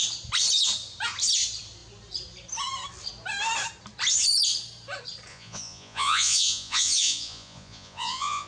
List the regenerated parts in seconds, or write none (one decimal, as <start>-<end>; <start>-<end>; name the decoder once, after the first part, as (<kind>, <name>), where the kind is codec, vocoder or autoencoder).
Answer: 5.3-8.5 (vocoder, Vocos)